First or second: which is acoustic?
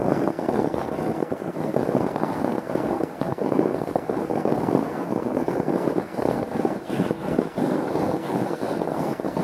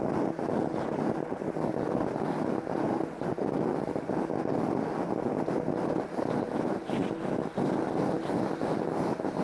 second